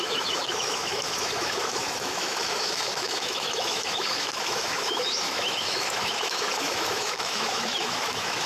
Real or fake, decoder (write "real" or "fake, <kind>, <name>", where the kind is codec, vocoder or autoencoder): fake, autoencoder, DAC-VAE